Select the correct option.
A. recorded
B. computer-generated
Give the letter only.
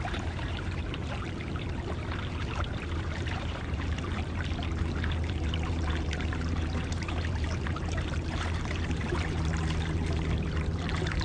B